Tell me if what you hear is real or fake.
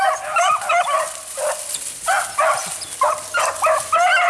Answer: fake